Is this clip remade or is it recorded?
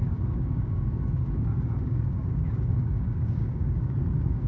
remade